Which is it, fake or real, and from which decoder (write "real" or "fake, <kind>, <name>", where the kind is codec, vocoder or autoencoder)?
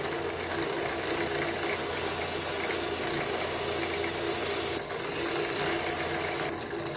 real